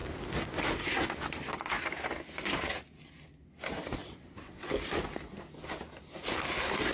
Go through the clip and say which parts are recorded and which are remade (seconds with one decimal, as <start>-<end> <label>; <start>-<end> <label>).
0.0-4.0 recorded; 4.0-4.7 remade; 4.7-6.9 recorded